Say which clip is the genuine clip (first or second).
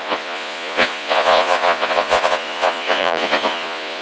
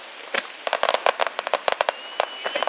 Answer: second